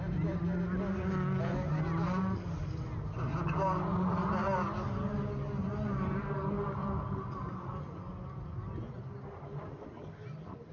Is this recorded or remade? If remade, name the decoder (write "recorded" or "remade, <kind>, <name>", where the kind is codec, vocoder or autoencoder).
recorded